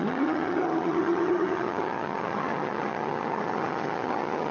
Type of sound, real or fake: fake